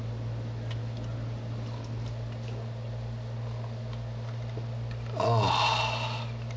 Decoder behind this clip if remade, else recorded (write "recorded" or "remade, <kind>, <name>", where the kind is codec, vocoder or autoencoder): recorded